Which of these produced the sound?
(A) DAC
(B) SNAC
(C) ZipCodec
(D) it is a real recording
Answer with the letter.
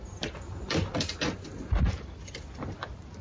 D